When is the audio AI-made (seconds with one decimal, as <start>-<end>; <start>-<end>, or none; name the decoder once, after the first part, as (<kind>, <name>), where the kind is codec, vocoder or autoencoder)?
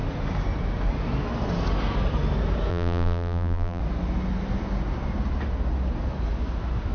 2.7-3.8 (vocoder, BigVGAN v2)